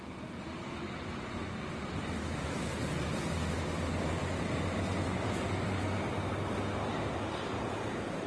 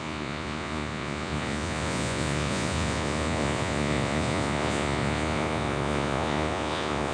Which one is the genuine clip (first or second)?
first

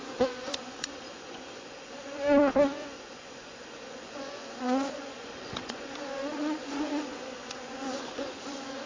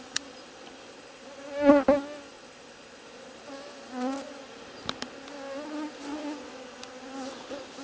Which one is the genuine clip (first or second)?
second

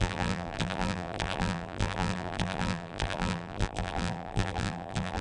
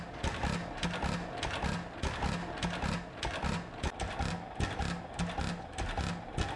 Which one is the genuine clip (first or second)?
second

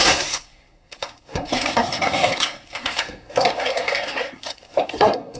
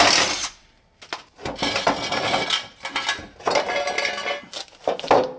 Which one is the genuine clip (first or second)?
second